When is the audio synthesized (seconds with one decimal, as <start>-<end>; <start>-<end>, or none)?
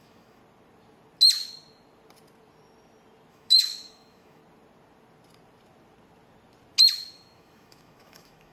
0.0-0.4; 3.3-4.4; 7.1-8.5